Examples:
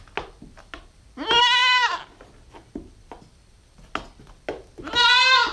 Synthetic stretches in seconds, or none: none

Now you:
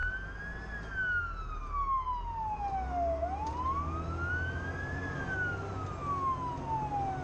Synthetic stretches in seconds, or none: none